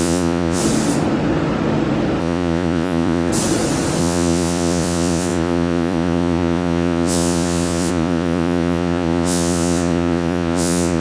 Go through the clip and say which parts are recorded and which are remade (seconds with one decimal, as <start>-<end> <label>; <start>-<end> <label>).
0.0-0.6 remade; 0.6-2.2 recorded; 2.2-3.3 remade; 3.3-4.0 recorded; 4.0-11.0 remade